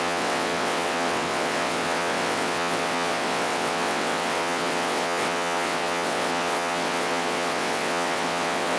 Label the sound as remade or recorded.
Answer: remade